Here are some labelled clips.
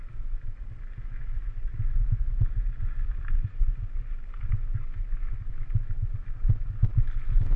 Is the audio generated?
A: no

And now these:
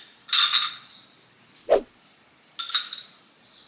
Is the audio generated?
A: no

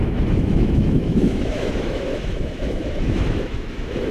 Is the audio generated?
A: yes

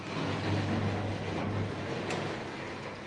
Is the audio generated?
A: no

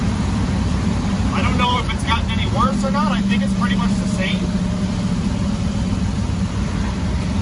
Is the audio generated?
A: yes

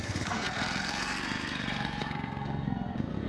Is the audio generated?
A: yes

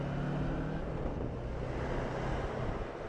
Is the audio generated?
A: no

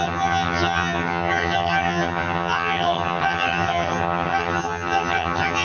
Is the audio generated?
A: yes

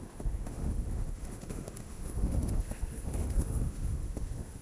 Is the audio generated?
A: yes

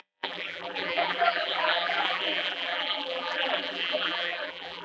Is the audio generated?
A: yes